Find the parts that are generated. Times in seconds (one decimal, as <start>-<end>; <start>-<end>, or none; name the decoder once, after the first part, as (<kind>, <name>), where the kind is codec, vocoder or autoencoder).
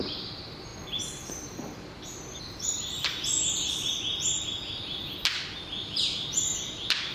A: none